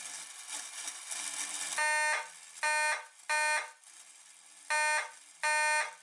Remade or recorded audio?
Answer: recorded